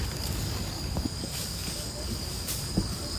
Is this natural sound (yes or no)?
no